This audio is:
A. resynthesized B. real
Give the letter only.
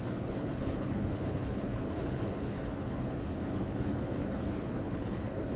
A